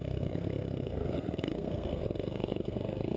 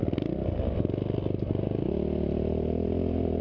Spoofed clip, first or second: first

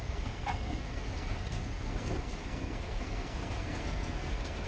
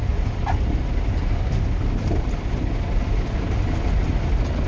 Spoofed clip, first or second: first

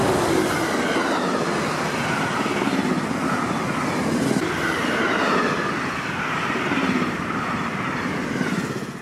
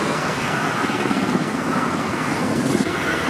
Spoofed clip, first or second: second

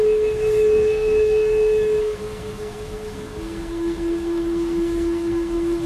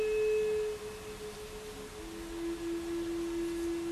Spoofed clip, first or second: first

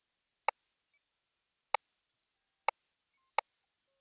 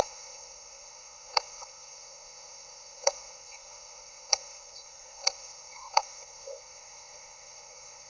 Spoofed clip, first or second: second